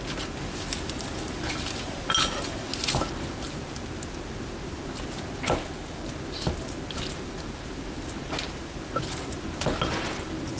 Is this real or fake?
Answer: real